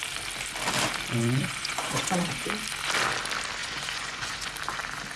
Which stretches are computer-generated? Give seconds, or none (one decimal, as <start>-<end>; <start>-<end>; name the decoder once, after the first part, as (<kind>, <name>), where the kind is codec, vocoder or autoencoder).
1.2-2.5 (vocoder, Vocos); 3.6-4.5